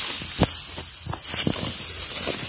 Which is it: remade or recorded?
recorded